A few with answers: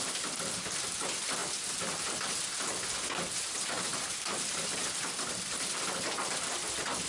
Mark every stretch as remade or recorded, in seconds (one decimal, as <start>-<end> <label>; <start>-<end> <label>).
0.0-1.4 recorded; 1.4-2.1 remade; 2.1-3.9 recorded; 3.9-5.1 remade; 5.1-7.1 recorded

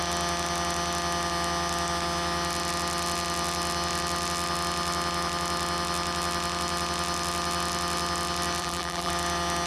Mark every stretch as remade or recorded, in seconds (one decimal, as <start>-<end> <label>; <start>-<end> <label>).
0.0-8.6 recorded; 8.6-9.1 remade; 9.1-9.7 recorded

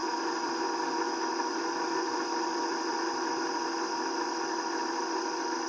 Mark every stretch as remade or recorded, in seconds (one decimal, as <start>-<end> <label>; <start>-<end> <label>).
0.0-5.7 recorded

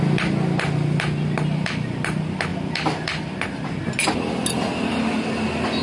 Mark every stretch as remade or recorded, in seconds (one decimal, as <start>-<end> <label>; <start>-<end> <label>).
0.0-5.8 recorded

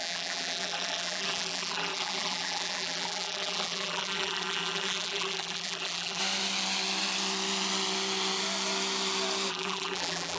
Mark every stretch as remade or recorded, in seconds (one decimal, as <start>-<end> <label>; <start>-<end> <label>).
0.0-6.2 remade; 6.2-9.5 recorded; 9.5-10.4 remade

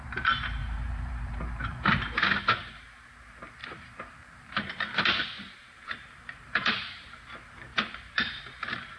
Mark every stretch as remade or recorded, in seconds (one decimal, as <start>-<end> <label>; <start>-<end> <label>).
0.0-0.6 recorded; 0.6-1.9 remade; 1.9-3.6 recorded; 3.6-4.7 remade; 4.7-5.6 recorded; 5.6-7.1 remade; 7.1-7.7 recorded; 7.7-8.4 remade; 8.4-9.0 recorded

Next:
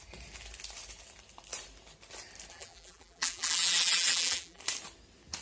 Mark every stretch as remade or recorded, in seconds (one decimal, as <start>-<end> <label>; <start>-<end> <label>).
0.0-2.5 recorded; 2.5-4.6 remade; 4.6-5.4 recorded